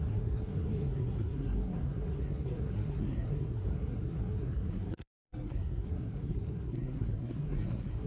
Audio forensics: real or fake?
fake